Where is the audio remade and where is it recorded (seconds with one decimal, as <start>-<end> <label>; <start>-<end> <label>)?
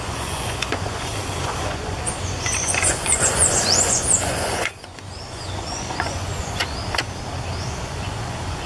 0.0-6.8 remade; 6.8-7.6 recorded; 7.6-8.7 remade